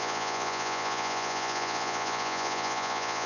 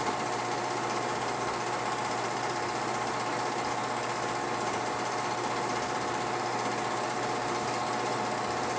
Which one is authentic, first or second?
second